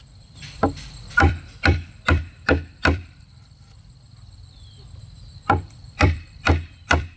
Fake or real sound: fake